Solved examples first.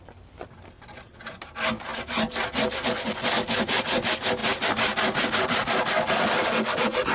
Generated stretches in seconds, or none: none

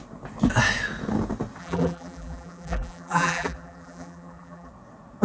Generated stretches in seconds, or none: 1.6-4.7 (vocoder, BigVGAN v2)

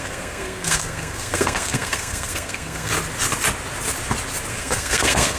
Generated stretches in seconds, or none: 0.0-2.9 (codec, SNAC); 4.5-5.4